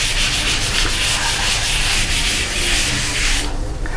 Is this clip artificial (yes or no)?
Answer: no